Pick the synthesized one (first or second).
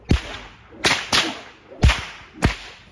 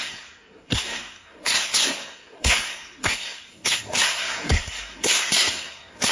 second